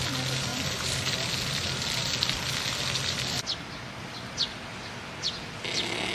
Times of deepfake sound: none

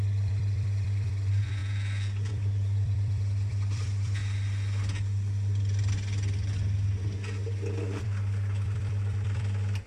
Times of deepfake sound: 0.0-1.6 (vocoder, BigVGAN v2); 2.3-4.2; 7.7-9.9

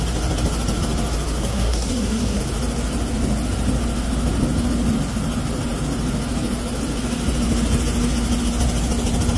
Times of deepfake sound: 1.4-2.4 (codec, SNAC)

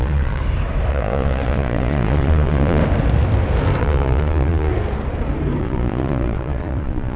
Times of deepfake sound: 0.0-0.4 (vocoder, Vocos); 0.9-2.8; 3.8-4.7; 5.6-7.2